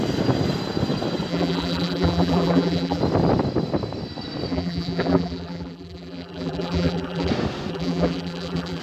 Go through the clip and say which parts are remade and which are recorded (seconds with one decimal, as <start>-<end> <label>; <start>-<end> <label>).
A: 0.0-1.3 recorded; 1.3-3.0 remade; 3.0-4.5 recorded; 4.5-7.3 remade; 7.3-7.7 recorded; 7.7-8.8 remade